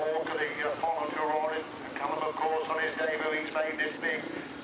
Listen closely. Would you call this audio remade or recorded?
recorded